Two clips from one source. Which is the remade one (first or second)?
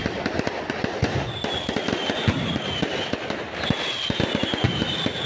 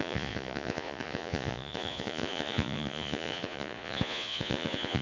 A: second